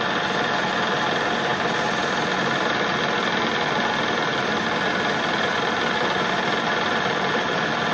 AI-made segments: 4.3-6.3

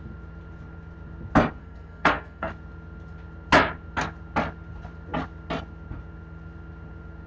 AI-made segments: 1.6-2.5

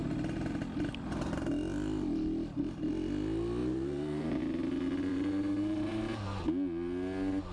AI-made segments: 3.6-4.4; 5.1-6.4

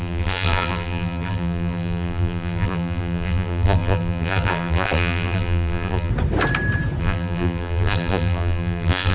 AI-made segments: 0.0-6.1; 7.0-9.1

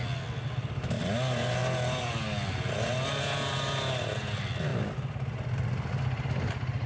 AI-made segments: none